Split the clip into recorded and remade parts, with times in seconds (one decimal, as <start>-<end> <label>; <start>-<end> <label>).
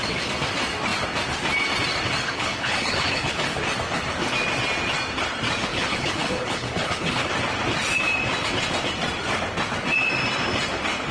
0.0-2.2 recorded; 2.2-3.6 remade; 3.6-5.7 recorded; 5.7-7.3 remade; 7.3-11.1 recorded